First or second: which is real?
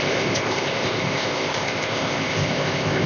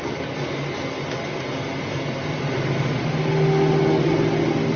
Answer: second